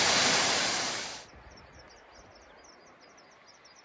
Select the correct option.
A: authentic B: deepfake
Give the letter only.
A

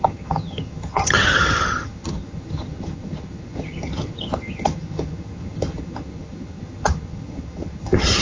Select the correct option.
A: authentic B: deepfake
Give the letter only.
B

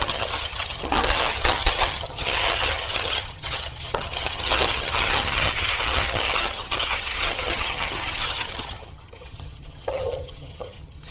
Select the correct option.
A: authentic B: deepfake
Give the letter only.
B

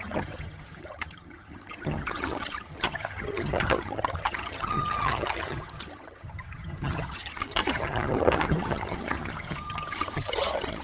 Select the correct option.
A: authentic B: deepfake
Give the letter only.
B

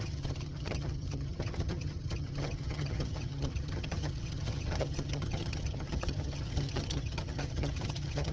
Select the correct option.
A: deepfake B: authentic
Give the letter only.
A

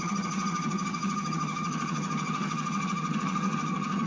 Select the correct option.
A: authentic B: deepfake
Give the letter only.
B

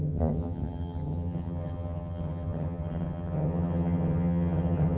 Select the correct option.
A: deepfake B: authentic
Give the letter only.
A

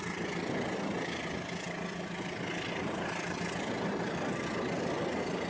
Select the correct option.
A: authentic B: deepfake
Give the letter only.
A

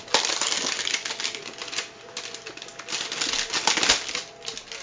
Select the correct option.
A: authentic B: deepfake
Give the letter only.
A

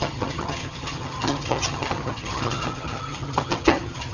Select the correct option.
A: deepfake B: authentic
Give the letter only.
A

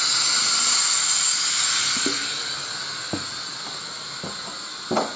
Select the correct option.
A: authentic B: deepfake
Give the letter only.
A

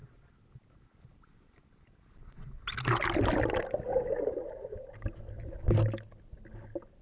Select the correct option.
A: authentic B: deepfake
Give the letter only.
A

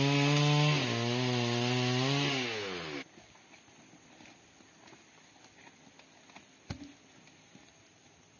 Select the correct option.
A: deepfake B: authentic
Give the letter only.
B